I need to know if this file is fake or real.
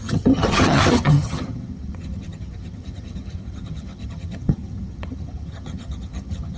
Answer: fake